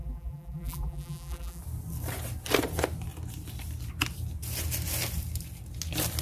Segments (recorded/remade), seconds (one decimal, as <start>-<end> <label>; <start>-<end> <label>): 0.0-1.6 remade; 1.6-6.2 recorded

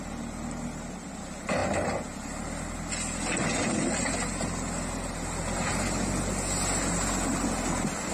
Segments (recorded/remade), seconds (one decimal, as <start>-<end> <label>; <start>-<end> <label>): 0.0-8.1 recorded

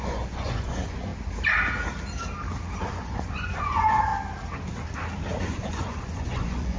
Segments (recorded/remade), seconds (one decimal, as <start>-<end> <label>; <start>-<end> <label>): 0.0-1.1 remade; 1.1-2.8 recorded; 2.8-4.1 remade; 4.1-5.4 recorded; 5.4-6.8 remade

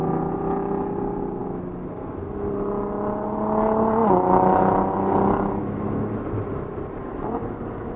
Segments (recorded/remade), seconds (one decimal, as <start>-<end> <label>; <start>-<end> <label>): 0.0-8.0 recorded

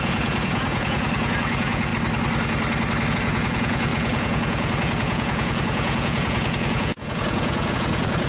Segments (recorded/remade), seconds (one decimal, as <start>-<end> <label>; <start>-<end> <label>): 0.0-1.9 remade; 1.9-3.1 recorded; 3.1-8.3 remade

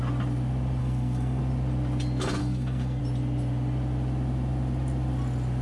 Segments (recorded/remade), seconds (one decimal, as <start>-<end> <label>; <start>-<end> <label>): 0.0-0.8 recorded; 0.8-1.4 remade; 1.4-2.4 recorded; 2.4-3.0 remade; 3.0-5.6 recorded

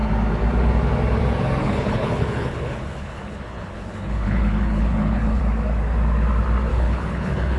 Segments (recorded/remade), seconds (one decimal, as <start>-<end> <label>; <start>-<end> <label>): 0.0-1.6 recorded; 1.6-5.4 remade; 5.4-6.7 recorded; 6.7-7.6 remade

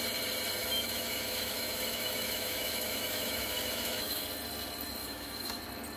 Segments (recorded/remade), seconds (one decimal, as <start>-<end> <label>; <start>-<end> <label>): 0.0-0.6 recorded; 0.6-4.2 remade; 4.2-5.0 recorded; 5.0-5.6 remade; 5.6-6.0 recorded